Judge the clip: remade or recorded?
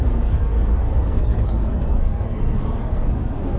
remade